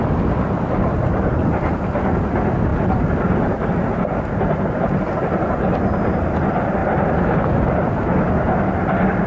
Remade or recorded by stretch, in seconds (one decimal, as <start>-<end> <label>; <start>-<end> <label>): 0.0-0.8 recorded; 0.8-1.4 remade; 1.4-6.8 recorded; 6.8-7.4 remade; 7.4-9.3 recorded